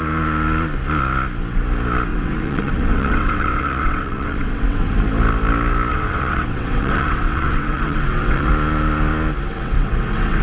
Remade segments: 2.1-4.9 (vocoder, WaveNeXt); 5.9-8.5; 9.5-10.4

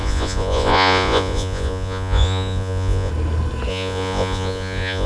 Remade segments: 0.0-3.1 (vocoder, Vocos); 3.7-5.1

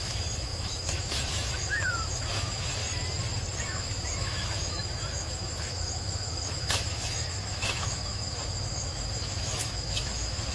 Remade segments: 0.0-2.8 (autoencoder, DAC-VAE); 3.6-10.5